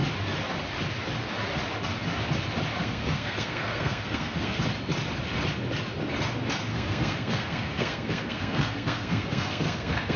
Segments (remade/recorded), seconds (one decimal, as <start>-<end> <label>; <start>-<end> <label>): 0.0-2.8 recorded; 2.8-4.6 remade; 4.6-6.7 recorded; 6.7-10.2 remade

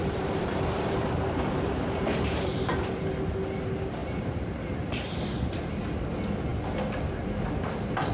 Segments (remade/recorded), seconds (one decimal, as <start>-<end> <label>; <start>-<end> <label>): 0.0-2.7 remade; 2.7-4.0 recorded; 4.0-4.6 remade; 4.6-8.1 recorded

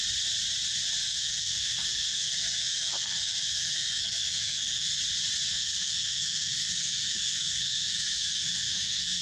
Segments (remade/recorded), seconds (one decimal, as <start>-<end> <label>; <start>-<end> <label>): 0.0-1.0 recorded; 1.0-5.0 remade; 5.0-5.5 recorded; 5.5-9.2 remade

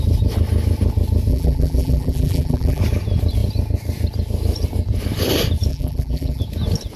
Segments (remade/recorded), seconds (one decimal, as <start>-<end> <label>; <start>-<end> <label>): 0.0-1.3 recorded; 1.3-2.8 remade; 2.8-5.7 recorded; 5.7-6.4 remade; 6.4-7.0 recorded

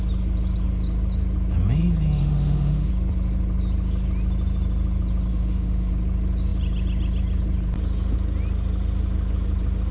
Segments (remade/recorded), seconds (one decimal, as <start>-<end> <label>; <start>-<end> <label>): 0.0-2.2 recorded; 2.2-2.9 remade; 2.9-5.3 recorded; 5.3-5.9 remade; 5.9-9.9 recorded

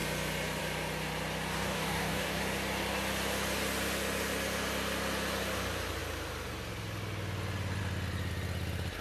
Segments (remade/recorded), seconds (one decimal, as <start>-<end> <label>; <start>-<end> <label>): 0.0-1.5 recorded; 1.5-2.4 remade; 2.4-9.0 recorded

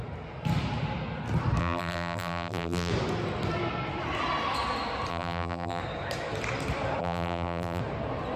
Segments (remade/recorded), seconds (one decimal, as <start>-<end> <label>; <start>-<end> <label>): 0.0-1.6 recorded; 1.6-2.9 remade; 2.9-5.1 recorded; 5.1-5.8 remade; 5.8-7.0 recorded; 7.0-7.8 remade; 7.8-8.4 recorded

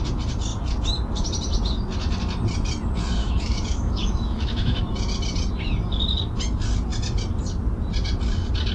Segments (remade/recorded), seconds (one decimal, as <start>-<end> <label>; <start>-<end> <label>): 0.0-3.2 recorded; 3.2-4.8 remade; 4.8-8.7 recorded